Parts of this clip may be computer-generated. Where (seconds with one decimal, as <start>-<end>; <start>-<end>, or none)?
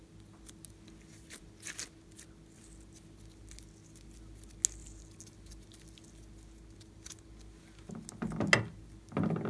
none